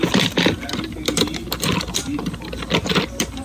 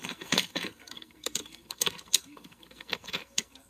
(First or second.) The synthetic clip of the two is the second